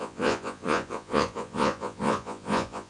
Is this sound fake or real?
fake